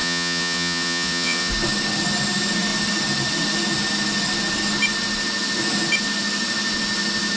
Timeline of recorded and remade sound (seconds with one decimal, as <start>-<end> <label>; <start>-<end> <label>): 0.0-1.5 remade; 1.5-7.4 recorded